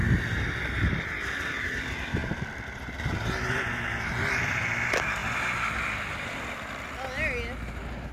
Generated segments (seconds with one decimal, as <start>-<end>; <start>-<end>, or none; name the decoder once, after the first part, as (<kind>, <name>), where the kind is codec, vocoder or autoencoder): 5.2-6.4 (vocoder, BigVGAN v2)

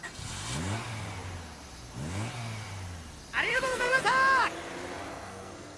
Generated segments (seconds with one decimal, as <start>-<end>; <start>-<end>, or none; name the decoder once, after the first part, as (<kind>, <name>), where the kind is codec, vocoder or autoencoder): 3.5-4.0 (codec, SNAC); 5.1-5.8

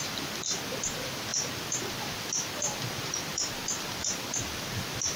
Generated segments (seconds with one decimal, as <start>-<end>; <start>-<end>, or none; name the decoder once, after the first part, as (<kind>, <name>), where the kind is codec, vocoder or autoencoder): none

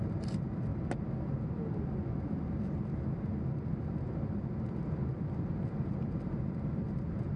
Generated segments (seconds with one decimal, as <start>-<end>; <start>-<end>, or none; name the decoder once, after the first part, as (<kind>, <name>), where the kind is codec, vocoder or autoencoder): 0.0-0.7 (vocoder, BigVGAN v2); 4.6-5.0; 5.7-7.4

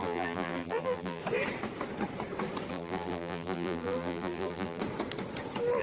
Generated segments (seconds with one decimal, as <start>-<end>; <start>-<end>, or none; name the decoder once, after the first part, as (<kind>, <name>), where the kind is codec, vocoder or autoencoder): 0.0-1.2 (vocoder, BigVGAN v2); 2.7-4.8

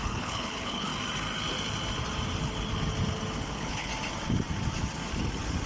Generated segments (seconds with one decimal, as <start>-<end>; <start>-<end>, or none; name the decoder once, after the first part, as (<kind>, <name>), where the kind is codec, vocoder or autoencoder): 0.0-0.9 (codec, HILCodec); 3.5-3.9

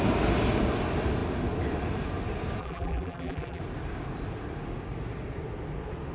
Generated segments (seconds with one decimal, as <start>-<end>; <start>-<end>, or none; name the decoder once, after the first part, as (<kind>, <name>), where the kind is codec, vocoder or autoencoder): 2.6-3.6 (vocoder, BigVGAN v2)

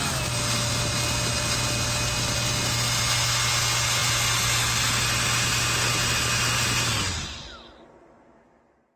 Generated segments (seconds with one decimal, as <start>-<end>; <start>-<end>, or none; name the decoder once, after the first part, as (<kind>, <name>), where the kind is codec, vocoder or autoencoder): none